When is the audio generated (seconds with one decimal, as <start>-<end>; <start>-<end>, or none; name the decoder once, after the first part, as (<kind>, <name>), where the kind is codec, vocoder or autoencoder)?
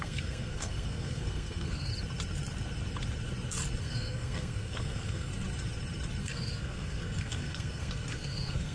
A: 0.0-1.9 (codec, SNAC); 3.8-5.3; 6.2-8.7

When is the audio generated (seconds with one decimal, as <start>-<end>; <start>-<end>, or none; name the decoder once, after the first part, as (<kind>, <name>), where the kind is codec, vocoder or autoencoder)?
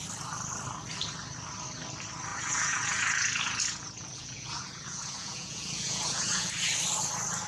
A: 2.3-6.5 (vocoder, Vocos)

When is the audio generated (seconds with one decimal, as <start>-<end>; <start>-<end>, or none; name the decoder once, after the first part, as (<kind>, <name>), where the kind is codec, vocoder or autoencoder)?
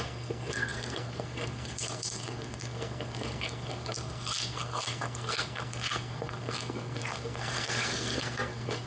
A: 0.0-8.9 (codec, SNAC)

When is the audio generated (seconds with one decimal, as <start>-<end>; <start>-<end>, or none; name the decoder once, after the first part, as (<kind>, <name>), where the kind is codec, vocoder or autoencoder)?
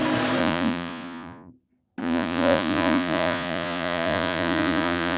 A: 0.4-1.5 (vocoder, Vocos); 2.0-5.2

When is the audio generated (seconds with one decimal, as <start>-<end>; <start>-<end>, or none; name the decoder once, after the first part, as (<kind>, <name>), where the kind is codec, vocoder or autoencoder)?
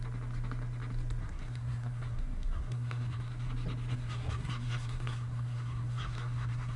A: 1.2-3.5 (codec, SNAC); 3.9-6.8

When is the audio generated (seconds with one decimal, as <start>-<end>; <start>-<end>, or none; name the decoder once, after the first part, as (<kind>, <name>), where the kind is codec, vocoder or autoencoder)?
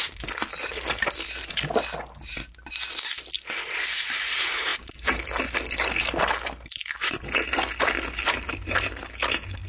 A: none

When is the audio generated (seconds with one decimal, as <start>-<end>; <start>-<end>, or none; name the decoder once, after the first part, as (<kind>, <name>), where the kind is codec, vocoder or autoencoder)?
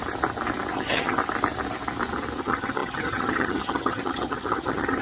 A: 0.7-1.2 (vocoder, HiFi-GAN); 2.4-5.0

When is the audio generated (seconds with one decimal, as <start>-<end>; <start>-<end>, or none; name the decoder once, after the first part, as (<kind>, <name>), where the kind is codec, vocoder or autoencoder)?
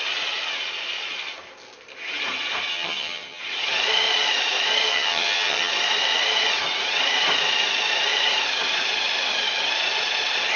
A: 2.7-3.4 (vocoder, HiFi-GAN); 4.9-5.7